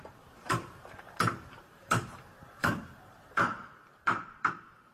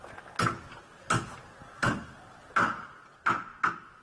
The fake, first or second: first